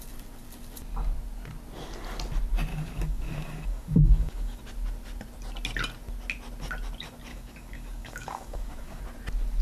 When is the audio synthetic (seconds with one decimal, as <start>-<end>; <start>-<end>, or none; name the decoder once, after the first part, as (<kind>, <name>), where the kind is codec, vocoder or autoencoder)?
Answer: 2.7-4.6 (codec, DAC); 7.3-9.0